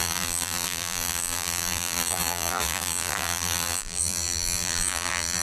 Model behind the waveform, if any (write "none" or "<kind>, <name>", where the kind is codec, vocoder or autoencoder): vocoder, BigVGAN v2